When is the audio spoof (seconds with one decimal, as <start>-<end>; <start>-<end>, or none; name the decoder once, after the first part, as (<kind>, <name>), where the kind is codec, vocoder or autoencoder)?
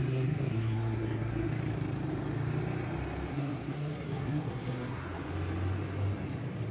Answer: 0.0-1.5 (codec, SNAC); 3.3-5.3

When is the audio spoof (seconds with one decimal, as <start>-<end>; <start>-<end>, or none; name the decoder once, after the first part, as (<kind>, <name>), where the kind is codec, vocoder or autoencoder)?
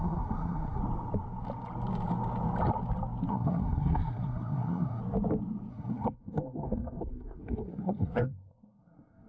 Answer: 0.0-0.8 (codec, SNAC); 3.3-5.0; 5.7-9.3